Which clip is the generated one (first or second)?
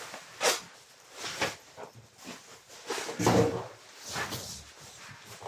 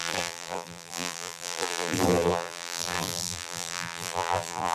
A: second